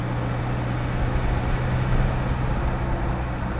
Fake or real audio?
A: real